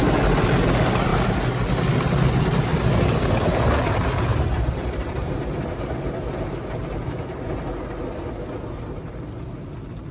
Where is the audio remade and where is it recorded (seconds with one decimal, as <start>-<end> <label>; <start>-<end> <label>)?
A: 0.0-4.3 recorded; 4.3-7.2 remade; 7.2-10.1 recorded